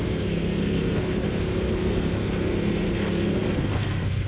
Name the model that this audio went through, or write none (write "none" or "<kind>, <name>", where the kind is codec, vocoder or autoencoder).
codec, SNAC